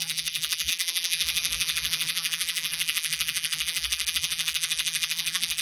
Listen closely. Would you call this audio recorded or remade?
remade